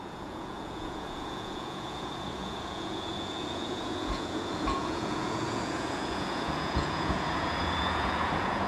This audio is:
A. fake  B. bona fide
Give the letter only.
A